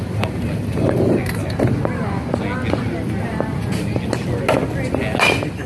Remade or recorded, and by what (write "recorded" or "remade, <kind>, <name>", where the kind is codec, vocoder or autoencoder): recorded